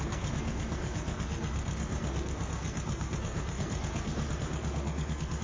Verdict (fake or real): fake